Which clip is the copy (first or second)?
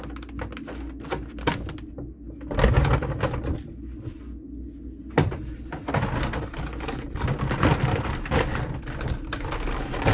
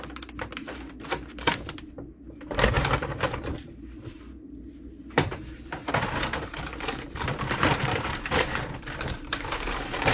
second